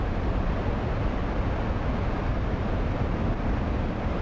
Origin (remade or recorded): recorded